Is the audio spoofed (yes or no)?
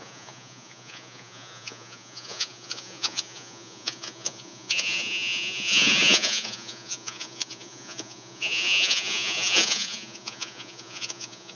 yes